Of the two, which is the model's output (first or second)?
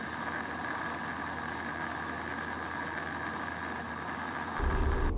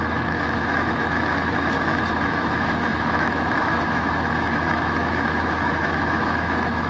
second